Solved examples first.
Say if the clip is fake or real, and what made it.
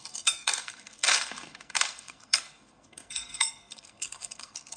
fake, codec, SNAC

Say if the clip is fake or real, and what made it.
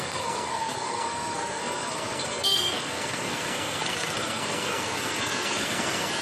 fake, codec, SNAC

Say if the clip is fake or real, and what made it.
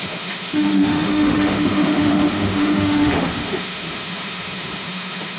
fake, autoencoder, DAC-VAE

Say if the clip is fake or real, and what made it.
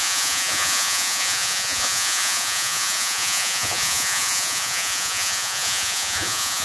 fake, vocoder, Vocos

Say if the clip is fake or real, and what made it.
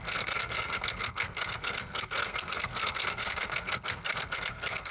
fake, codec, SNAC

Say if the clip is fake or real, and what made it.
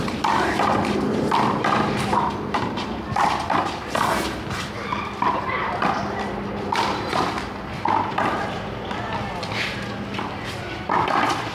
fake, vocoder, BigVGAN v2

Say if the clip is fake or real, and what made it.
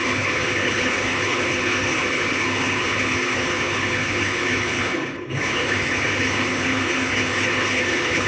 fake, codec, HILCodec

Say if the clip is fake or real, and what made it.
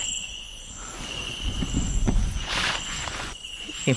fake, vocoder, Vocos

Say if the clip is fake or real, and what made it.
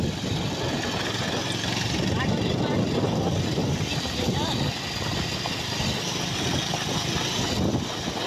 real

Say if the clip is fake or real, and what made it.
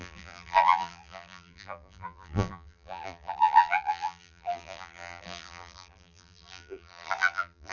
fake, vocoder, BigVGAN v2